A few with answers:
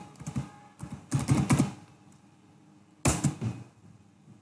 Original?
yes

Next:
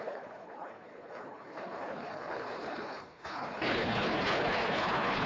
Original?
no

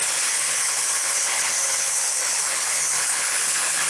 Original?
no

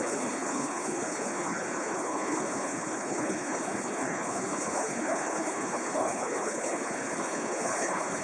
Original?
no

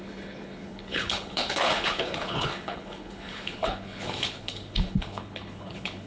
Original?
no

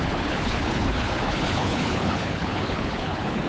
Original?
no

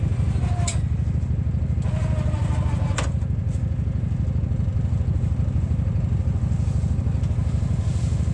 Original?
yes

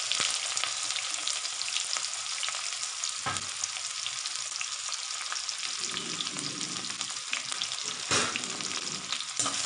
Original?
yes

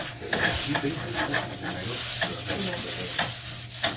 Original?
yes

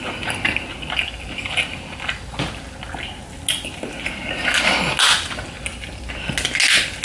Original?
yes